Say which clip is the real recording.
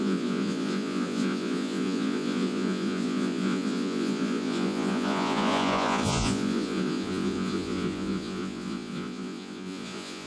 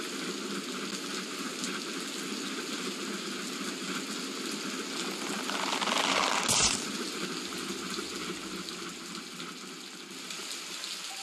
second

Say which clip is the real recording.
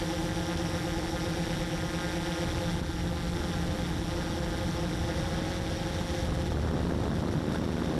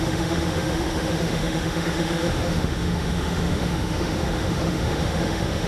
first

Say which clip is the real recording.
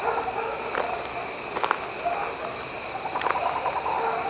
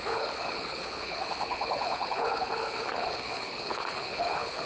first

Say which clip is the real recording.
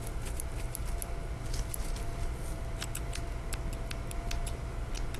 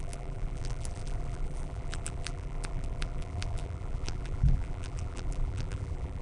first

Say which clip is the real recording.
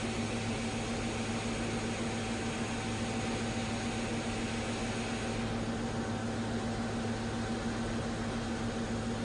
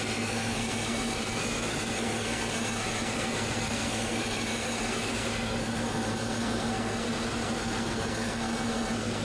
first